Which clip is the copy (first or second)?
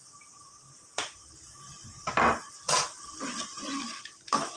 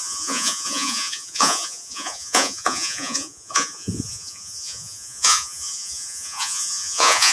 second